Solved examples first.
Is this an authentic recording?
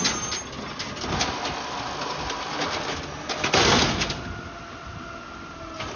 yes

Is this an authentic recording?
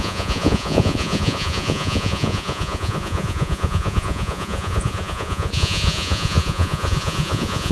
no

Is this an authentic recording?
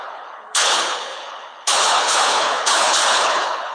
no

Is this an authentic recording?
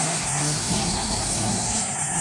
no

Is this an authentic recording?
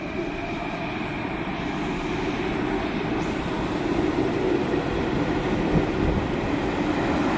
no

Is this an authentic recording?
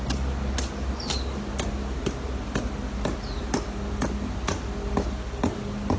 yes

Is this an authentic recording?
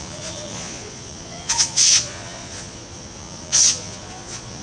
no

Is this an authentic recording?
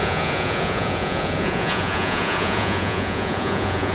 no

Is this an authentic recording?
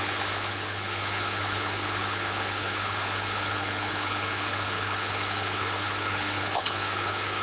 no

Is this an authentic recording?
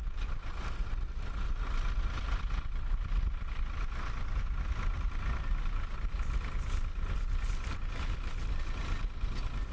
yes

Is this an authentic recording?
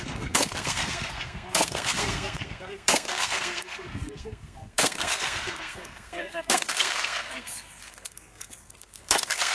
no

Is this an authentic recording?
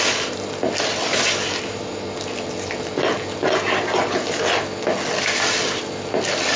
yes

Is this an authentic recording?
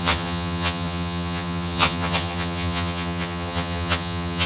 no